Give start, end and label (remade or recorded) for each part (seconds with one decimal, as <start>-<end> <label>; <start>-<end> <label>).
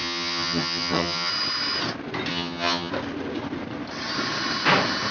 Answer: 0.0-1.3 remade; 1.3-2.3 recorded; 2.3-2.9 remade; 2.9-5.1 recorded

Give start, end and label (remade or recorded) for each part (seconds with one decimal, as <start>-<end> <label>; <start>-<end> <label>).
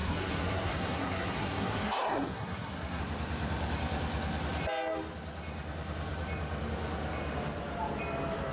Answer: 0.0-3.0 remade; 3.0-8.5 recorded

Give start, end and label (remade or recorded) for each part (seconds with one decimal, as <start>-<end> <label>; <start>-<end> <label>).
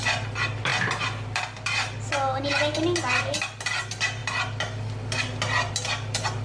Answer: 0.0-6.4 recorded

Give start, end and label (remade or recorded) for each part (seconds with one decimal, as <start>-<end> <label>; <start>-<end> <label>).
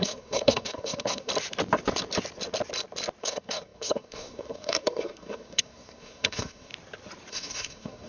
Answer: 0.0-1.3 remade; 1.3-3.2 recorded; 3.2-6.7 remade; 6.7-7.3 recorded; 7.3-8.1 remade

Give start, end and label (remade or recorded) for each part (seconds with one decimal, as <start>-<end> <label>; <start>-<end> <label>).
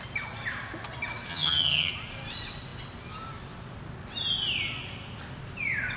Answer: 0.0-1.3 recorded; 1.3-1.9 remade; 1.9-6.0 recorded